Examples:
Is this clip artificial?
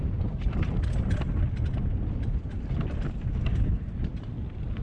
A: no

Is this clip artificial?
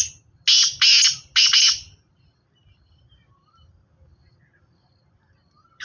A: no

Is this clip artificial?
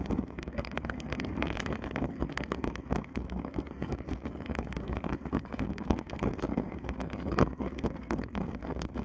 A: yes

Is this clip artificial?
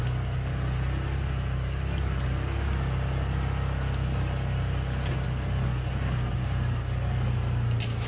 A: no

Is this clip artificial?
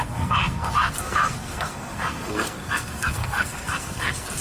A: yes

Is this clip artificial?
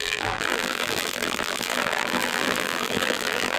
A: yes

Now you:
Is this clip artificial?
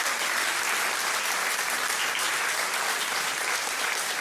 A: no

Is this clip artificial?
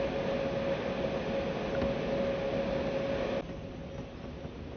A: no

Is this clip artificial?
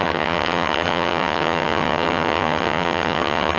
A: yes